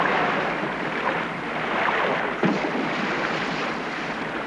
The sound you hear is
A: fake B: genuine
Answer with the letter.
A